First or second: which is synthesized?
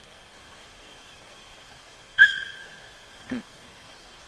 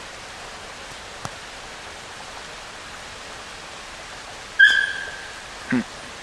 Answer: first